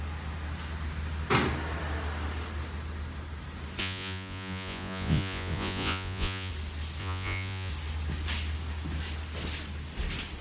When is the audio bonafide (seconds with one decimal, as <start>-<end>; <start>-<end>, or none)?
0.0-3.8; 6.5-7.0; 7.7-10.4